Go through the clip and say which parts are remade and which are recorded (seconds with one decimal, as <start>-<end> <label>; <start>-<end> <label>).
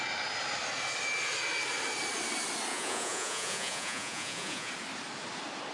0.0-2.7 recorded; 2.7-4.7 remade; 4.7-5.7 recorded